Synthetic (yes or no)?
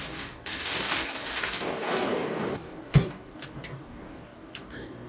yes